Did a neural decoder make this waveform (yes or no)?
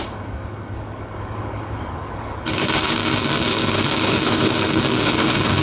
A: yes